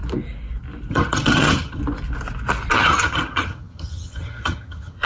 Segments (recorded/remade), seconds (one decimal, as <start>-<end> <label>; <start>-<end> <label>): 0.0-0.9 recorded; 0.9-1.8 remade; 1.8-2.7 recorded; 2.7-5.1 remade